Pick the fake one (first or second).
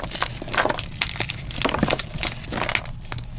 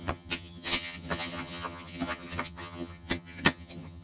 second